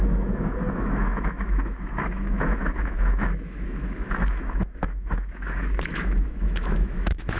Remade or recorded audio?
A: remade